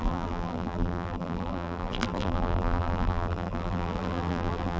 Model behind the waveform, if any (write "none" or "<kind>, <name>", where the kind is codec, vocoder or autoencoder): vocoder, BigVGAN v2